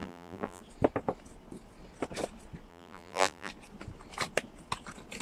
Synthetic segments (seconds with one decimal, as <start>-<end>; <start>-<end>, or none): 0.0-0.6; 2.7-3.5